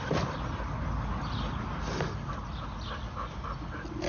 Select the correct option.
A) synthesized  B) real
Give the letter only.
B